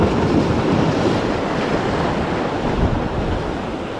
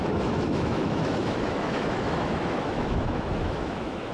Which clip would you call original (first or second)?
first